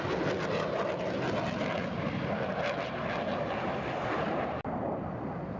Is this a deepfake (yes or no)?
no